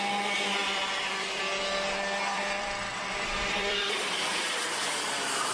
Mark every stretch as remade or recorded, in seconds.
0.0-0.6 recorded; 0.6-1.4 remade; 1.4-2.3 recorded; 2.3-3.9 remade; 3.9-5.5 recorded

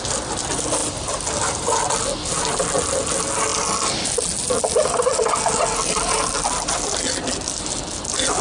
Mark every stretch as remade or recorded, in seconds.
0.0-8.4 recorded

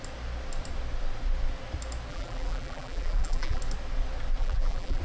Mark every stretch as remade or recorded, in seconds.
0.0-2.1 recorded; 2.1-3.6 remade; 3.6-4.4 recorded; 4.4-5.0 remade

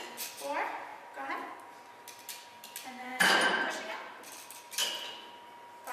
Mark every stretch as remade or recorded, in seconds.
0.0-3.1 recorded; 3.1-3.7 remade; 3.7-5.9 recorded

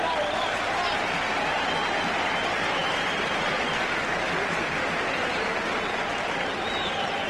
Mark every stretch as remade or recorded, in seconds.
0.0-2.8 recorded; 2.8-4.1 remade; 4.1-7.3 recorded

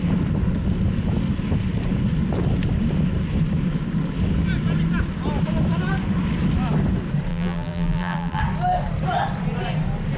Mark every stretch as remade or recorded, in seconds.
0.0-7.3 recorded; 7.3-8.4 remade; 8.4-10.2 recorded

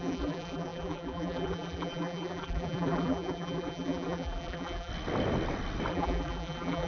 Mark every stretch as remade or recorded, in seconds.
0.0-4.9 remade; 4.9-5.9 recorded; 5.9-6.9 remade